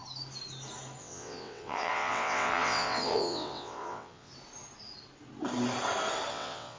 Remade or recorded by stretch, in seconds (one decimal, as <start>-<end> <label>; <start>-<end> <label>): 0.0-1.0 recorded; 1.0-4.3 remade; 4.3-6.3 recorded; 6.3-6.8 remade